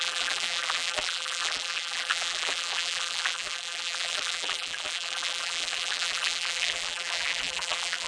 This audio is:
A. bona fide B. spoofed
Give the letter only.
B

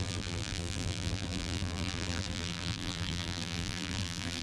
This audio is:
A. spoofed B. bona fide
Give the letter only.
A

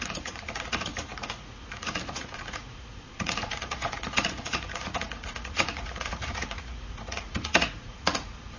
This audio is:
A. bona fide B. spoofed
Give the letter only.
B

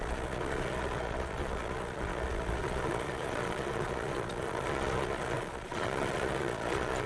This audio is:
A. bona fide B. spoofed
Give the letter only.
B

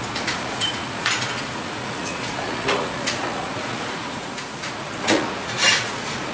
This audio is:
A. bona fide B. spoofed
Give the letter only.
B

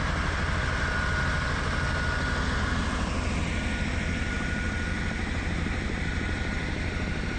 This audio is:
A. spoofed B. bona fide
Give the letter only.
B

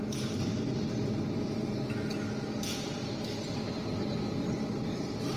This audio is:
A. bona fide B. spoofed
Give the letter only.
A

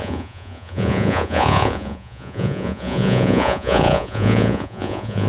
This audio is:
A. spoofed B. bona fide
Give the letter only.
A